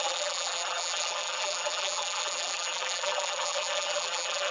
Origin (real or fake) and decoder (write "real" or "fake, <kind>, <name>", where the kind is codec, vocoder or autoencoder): fake, vocoder, BigVGAN v2